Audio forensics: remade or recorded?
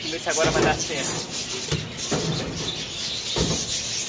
recorded